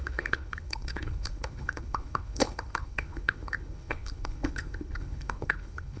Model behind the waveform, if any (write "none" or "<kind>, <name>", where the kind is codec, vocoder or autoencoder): codec, HILCodec